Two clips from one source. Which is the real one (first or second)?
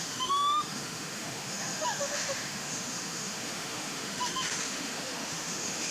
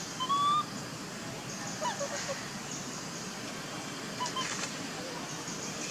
second